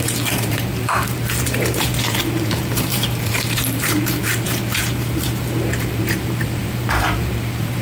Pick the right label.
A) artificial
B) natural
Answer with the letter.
A